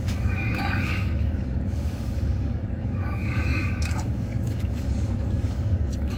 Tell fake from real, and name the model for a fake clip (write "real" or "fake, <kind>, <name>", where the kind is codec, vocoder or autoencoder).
fake, codec, DAC